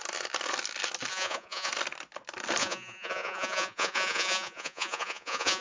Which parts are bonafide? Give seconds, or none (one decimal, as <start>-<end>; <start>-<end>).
0.0-1.1; 1.7-2.6